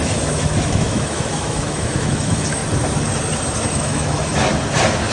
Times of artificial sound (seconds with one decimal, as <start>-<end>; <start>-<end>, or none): 0.0-2.6; 3.7-4.3